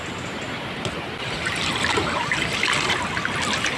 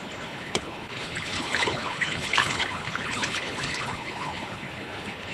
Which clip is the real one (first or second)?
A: first